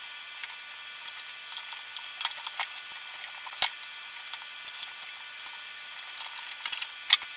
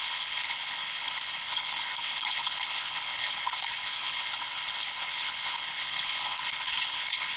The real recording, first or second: first